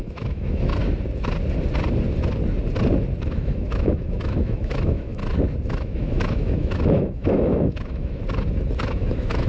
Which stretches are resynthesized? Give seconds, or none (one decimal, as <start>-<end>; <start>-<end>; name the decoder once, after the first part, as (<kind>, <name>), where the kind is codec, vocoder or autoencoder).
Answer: 0.0-0.7 (autoencoder, DAC-VAE); 3.2-5.2; 5.7-8.2; 8.9-9.5